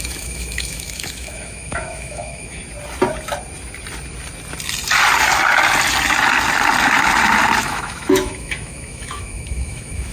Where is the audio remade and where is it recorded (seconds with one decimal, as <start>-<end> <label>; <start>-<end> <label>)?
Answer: 0.0-2.6 remade; 2.6-7.6 recorded; 7.6-10.1 remade